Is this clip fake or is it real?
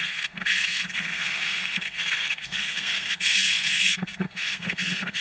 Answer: fake